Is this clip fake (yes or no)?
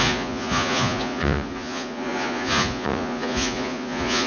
yes